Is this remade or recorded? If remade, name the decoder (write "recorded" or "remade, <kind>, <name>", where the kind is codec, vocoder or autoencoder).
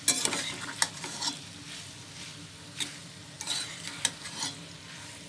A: recorded